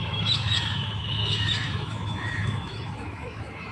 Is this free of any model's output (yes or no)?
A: no